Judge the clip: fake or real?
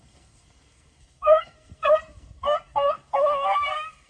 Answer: fake